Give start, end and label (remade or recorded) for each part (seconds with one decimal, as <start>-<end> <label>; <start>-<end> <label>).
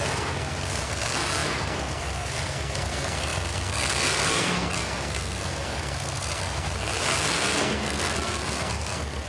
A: 0.0-9.3 remade